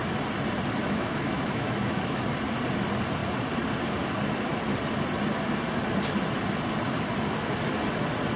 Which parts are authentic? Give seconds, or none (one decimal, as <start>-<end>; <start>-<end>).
0.0-0.8; 2.2-8.4